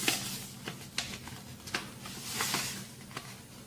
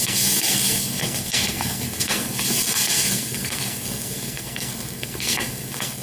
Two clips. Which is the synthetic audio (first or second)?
second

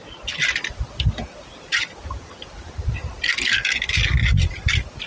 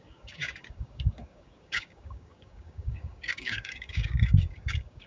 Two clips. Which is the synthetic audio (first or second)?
second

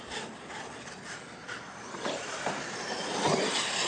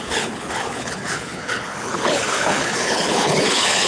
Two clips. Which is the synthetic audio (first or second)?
second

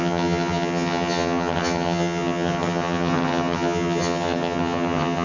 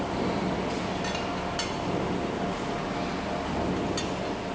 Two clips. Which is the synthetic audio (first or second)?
first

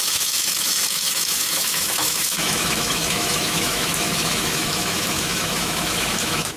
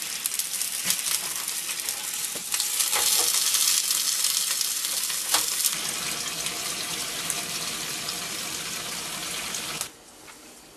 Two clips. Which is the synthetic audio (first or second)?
first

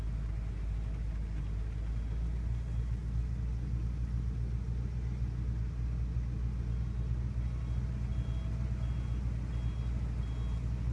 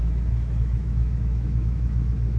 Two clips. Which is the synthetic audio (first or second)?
second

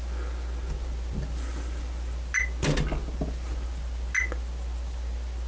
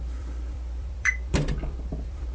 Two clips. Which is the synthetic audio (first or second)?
second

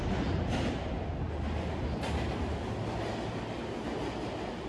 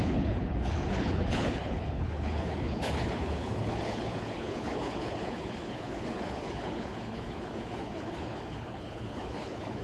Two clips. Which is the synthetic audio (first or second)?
second